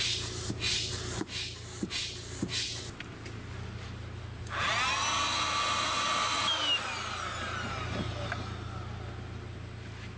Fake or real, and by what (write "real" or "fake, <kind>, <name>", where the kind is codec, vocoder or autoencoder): real